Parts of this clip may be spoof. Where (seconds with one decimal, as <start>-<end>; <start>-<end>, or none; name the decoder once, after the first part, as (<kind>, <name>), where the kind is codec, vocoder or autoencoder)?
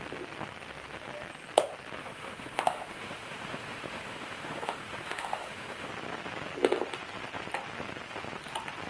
2.0-5.9 (autoencoder, DAC-VAE)